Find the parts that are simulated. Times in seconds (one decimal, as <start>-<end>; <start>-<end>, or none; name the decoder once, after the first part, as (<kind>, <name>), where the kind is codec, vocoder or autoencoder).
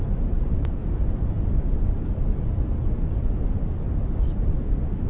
0.0-0.8 (vocoder, BigVGAN v2); 1.8-2.2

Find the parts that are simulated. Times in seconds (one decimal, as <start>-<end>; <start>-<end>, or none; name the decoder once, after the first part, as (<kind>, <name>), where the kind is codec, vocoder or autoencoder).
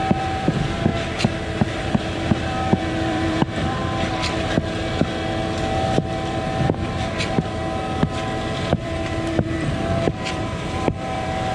0.0-0.9 (vocoder, BigVGAN v2); 1.8-3.8; 6.2-7.6; 8.3-11.5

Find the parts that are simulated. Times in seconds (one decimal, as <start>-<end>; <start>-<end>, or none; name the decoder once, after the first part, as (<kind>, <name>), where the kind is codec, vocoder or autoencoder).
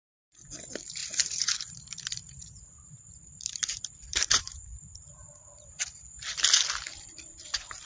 1.0-5.7 (vocoder, BigVGAN v2)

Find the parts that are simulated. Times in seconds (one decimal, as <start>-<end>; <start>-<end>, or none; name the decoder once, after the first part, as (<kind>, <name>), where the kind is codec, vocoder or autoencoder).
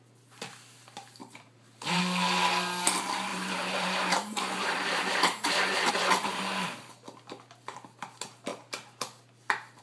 1.2-2.0 (vocoder, BigVGAN v2); 3.3-5.9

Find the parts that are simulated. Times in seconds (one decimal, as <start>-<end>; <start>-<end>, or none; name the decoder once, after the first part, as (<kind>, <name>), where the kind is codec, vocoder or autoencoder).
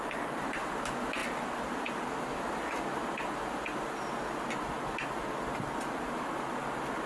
none